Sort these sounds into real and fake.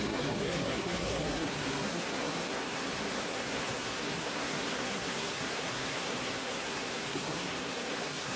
fake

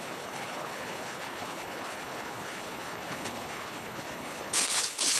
fake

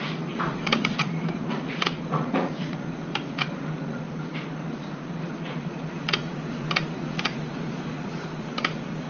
fake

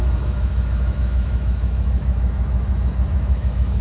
fake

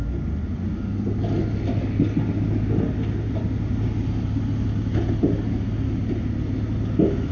real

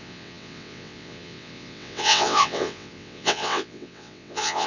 fake